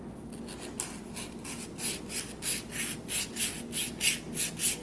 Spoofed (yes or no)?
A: no